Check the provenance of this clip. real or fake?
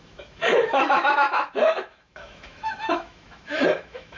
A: fake